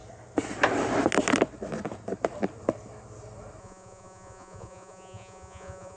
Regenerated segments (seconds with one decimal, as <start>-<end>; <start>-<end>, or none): 3.6-6.0

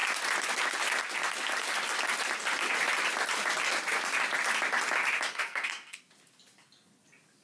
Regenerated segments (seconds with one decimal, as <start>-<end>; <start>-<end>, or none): 5.3-6.1